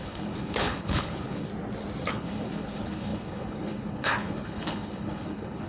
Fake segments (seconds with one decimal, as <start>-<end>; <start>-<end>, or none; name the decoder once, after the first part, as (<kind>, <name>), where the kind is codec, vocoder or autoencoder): 0.0-1.5 (codec, HILCodec); 2.1-5.7

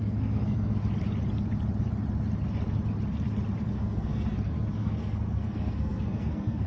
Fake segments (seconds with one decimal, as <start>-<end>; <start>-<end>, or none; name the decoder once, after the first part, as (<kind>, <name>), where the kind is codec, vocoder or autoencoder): 0.0-0.8 (codec, SNAC); 3.7-6.7

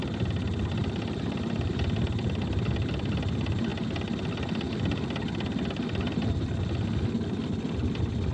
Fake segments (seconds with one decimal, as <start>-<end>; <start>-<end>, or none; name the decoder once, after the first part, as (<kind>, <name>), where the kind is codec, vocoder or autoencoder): none

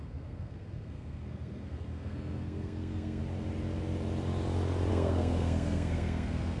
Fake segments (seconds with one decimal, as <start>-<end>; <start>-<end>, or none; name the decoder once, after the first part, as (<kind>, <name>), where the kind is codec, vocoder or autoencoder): 0.0-3.2 (codec, SNAC); 4.9-6.6

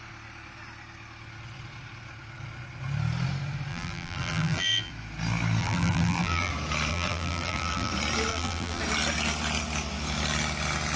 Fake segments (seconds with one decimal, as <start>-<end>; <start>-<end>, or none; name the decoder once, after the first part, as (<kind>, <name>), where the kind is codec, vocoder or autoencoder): 3.7-4.9 (vocoder, BigVGAN v2); 5.6-6.5; 6.9-7.9; 8.3-8.8

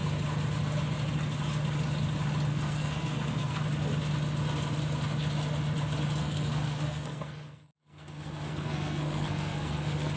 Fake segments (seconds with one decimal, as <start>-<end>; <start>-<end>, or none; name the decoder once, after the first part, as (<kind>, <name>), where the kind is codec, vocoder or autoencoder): 2.5-3.6 (codec, SNAC); 6.2-10.2

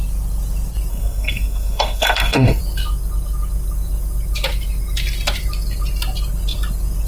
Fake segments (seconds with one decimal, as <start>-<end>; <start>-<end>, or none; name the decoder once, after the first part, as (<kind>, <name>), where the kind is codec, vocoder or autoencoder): 0.9-2.6 (codec, SNAC)